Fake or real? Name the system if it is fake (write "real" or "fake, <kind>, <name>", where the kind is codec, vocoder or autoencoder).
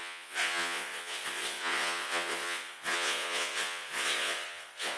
fake, vocoder, Vocos